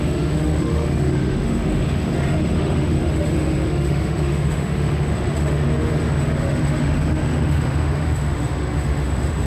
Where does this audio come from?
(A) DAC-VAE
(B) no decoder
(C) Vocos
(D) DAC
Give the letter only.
A